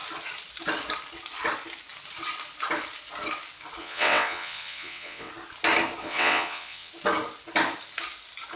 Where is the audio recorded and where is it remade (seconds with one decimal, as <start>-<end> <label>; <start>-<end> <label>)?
0.0-3.8 recorded; 3.8-5.3 remade; 5.3-6.0 recorded; 6.0-6.9 remade; 6.9-8.6 recorded